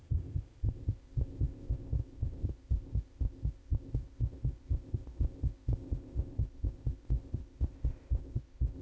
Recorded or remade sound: remade